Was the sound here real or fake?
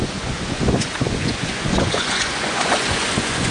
fake